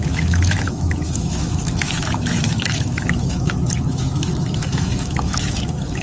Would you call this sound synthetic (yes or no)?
yes